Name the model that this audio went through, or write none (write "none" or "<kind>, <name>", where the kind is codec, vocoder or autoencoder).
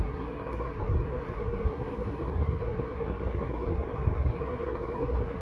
codec, SNAC